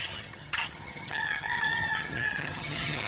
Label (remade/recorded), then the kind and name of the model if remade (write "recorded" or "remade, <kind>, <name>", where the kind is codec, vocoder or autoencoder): remade, vocoder, HiFi-GAN